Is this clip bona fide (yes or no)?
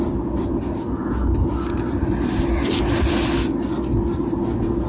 yes